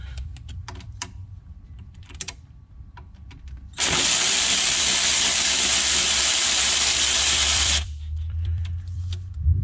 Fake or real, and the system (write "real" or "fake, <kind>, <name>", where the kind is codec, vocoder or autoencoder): fake, vocoder, BigVGAN v2